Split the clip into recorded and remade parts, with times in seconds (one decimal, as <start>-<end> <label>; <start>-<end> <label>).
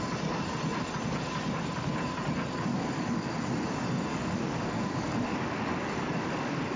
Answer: 0.0-2.7 recorded; 2.7-3.3 remade; 3.3-4.1 recorded; 4.1-6.8 remade